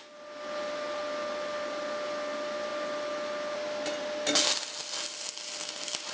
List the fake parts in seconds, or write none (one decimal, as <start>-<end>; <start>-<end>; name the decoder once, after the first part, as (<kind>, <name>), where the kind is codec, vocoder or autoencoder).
none